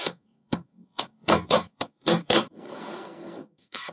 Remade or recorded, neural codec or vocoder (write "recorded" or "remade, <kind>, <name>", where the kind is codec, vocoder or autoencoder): remade, codec, SNAC